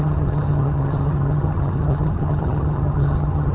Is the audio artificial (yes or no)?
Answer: yes